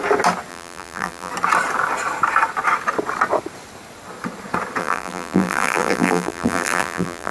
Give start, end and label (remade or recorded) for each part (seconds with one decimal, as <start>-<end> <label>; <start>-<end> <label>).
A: 0.0-0.5 recorded; 0.5-1.3 remade; 1.3-4.8 recorded; 4.8-7.3 remade